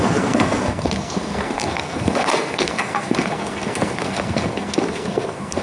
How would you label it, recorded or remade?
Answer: remade